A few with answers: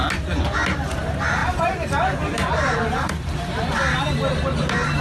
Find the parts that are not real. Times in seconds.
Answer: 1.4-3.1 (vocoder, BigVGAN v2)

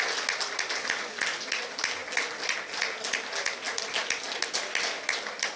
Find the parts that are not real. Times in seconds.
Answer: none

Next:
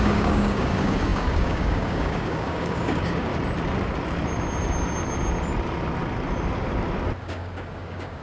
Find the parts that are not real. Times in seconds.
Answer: 0.0-3.3 (codec, DAC); 7.2-8.2

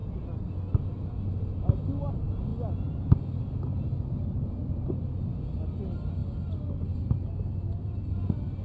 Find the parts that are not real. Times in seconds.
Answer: none